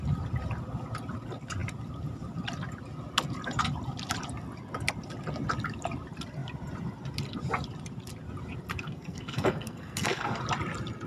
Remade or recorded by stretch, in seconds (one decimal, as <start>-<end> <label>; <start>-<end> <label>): 0.0-8.7 recorded; 8.7-10.4 remade; 10.4-11.1 recorded